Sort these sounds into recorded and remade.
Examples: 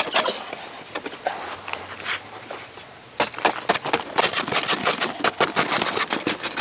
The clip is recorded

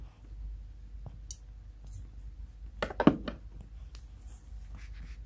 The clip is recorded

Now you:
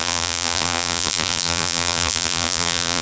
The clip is remade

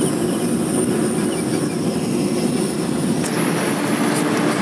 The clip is recorded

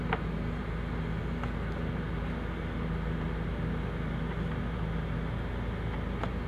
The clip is recorded